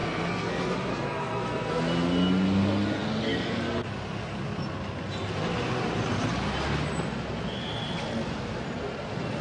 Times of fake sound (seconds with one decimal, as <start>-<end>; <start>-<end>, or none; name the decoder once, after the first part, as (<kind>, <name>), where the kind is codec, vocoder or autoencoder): 0.0-0.5 (codec, SNAC); 0.9-1.7